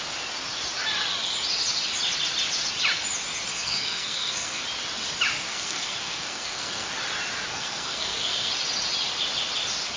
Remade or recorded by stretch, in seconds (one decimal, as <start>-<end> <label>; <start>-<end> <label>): 0.0-3.5 recorded; 3.5-4.6 remade; 4.6-5.5 recorded; 5.5-6.9 remade; 6.9-7.5 recorded; 7.5-8.5 remade; 8.5-10.0 recorded